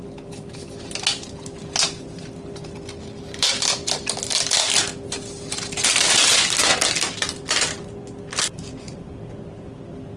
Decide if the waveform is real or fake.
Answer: real